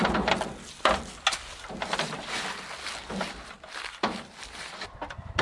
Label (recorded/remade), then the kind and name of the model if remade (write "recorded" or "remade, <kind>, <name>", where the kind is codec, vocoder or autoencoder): recorded